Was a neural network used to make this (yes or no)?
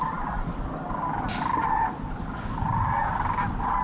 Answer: no